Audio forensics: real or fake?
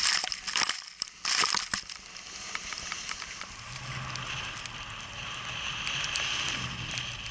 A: real